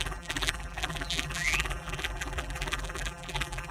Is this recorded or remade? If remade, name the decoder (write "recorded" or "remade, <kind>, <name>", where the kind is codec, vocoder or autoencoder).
remade, vocoder, BigVGAN v2